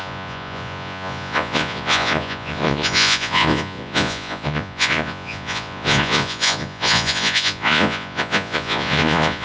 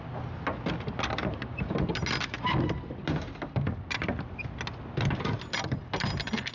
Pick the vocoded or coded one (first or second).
first